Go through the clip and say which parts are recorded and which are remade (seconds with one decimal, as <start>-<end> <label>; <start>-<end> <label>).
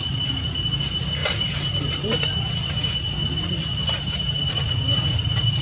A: 0.0-5.6 recorded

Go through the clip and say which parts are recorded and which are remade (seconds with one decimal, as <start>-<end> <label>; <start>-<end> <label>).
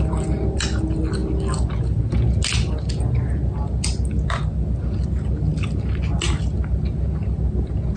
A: 0.0-8.0 recorded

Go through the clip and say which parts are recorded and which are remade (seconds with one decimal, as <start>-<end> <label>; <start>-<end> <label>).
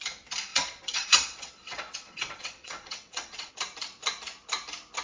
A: 0.0-0.5 recorded; 0.5-3.5 remade; 3.5-5.0 recorded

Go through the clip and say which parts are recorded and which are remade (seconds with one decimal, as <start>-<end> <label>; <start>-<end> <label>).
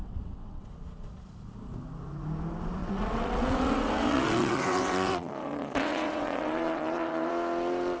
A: 0.0-0.7 remade; 0.7-2.8 recorded; 2.8-7.3 remade; 7.3-8.0 recorded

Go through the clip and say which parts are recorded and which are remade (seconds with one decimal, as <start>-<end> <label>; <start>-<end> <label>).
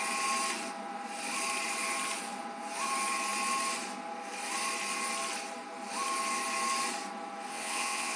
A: 0.0-7.5 recorded; 7.5-8.2 remade